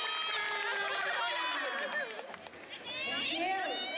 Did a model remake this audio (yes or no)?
no